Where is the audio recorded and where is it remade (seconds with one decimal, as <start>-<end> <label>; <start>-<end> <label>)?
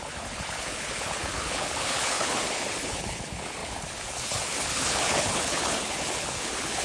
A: 0.0-6.8 remade